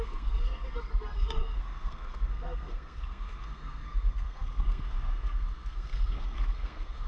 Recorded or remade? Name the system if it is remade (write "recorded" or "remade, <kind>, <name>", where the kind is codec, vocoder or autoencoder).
remade, codec, SNAC